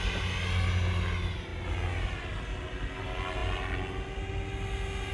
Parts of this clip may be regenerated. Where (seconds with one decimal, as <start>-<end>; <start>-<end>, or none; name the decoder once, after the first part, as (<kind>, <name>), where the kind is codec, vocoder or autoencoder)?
none